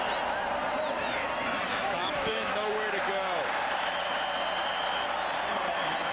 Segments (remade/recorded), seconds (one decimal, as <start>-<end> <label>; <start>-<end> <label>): 0.0-1.7 recorded; 1.7-2.7 remade; 2.7-6.1 recorded